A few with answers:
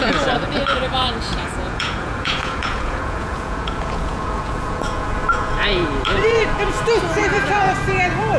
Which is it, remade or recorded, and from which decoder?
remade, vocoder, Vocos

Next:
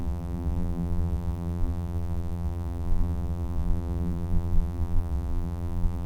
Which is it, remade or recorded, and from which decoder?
remade, vocoder, BigVGAN v2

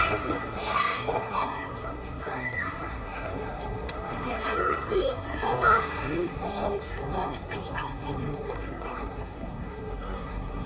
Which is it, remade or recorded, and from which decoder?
remade, codec, SNAC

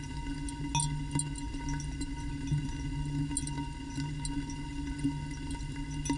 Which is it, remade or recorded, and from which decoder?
recorded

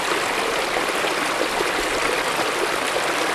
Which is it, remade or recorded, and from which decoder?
recorded